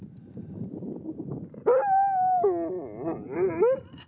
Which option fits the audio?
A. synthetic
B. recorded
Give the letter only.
B